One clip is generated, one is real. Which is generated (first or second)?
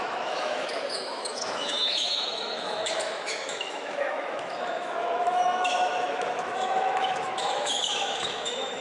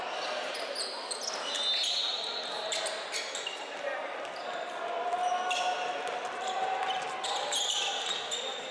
first